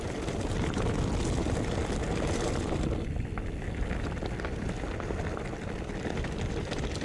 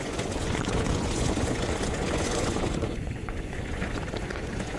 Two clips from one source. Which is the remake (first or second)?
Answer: second